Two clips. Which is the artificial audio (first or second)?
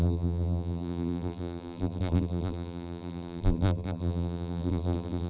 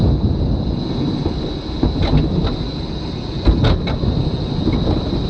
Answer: first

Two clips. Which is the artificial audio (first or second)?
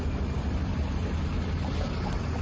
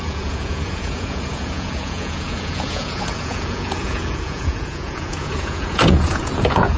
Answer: second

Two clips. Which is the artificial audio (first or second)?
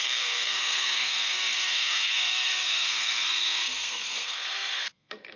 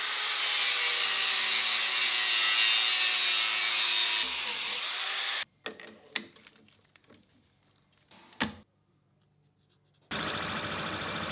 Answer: first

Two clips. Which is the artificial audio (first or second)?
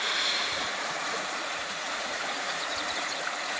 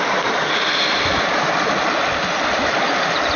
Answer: first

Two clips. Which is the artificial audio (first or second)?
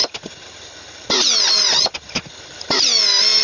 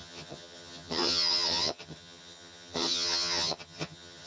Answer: second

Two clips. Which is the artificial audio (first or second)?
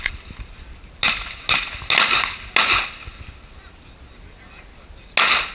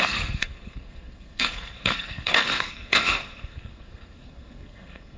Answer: second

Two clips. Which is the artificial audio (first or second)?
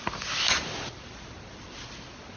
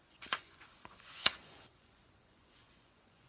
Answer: second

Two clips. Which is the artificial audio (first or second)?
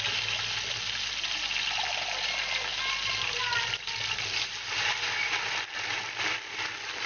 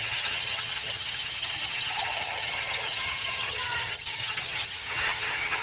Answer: second